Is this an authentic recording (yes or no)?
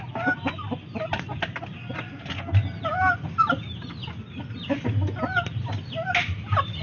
yes